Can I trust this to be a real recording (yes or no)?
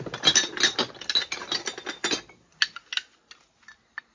yes